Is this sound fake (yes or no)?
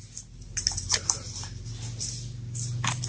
no